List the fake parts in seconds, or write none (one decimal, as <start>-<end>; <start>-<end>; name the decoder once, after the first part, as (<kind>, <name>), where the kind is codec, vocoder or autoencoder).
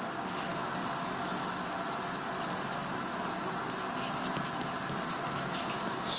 none